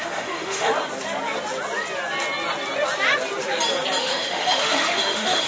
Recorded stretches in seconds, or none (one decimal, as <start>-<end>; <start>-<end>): 0.7-4.0